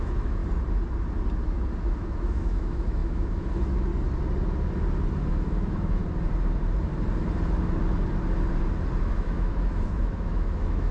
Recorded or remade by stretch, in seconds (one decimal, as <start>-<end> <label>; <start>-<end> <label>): 0.0-0.4 remade; 0.4-1.8 recorded; 1.8-3.9 remade; 3.9-5.3 recorded; 5.3-6.0 remade; 6.0-9.1 recorded; 9.1-10.9 remade